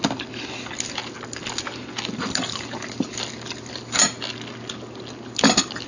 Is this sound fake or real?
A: real